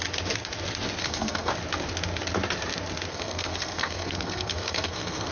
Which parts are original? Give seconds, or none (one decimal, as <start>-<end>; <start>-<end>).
0.0-1.0; 1.5-3.1